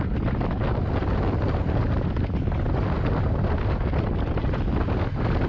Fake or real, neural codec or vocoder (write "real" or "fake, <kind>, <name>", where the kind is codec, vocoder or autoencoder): real